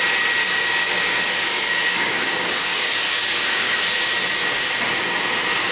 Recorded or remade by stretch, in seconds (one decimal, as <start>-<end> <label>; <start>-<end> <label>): 0.0-0.4 recorded; 0.4-3.8 remade; 3.8-5.7 recorded